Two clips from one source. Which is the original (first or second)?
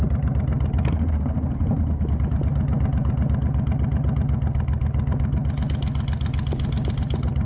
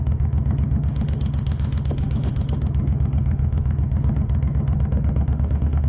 first